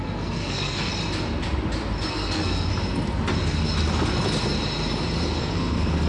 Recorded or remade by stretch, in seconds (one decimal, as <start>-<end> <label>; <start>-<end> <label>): 0.0-0.9 remade; 0.9-2.1 recorded; 2.1-2.7 remade; 2.7-5.4 recorded; 5.4-6.1 remade